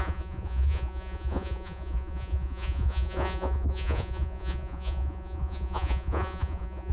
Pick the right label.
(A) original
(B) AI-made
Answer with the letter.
B